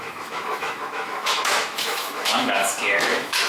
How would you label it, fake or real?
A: fake